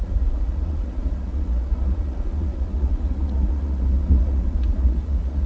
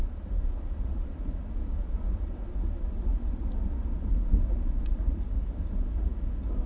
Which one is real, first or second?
second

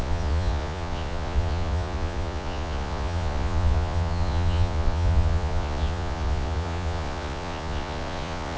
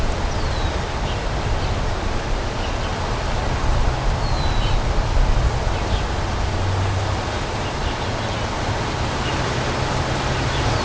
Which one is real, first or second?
second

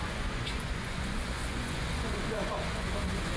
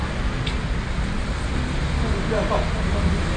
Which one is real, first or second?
second